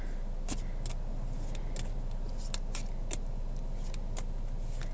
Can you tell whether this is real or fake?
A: real